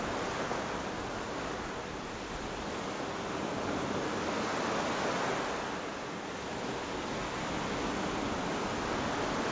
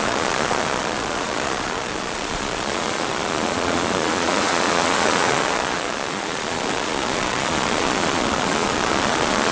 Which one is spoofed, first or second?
second